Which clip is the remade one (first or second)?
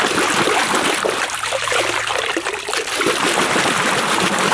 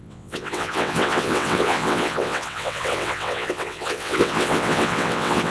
second